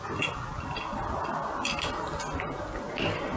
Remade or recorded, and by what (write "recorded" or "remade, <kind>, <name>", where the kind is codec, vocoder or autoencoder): recorded